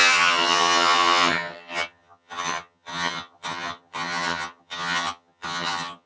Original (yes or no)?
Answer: no